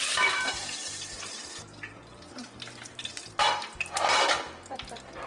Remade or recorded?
remade